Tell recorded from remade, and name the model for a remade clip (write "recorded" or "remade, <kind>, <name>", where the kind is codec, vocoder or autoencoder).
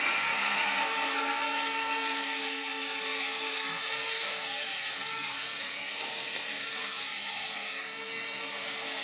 remade, codec, SNAC